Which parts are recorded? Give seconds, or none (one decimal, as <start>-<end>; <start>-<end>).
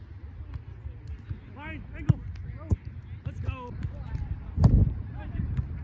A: 0.0-5.8